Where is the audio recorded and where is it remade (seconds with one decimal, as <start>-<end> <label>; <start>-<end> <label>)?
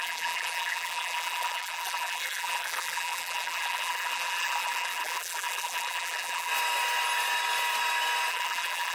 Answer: 0.0-6.5 remade; 6.5-8.3 recorded; 8.3-8.9 remade